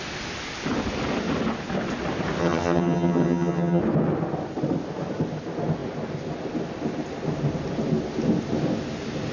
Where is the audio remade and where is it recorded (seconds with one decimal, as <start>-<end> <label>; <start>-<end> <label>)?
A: 0.0-2.4 recorded; 2.4-3.8 remade; 3.8-9.3 recorded